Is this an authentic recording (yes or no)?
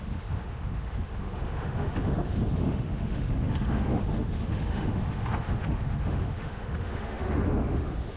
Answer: no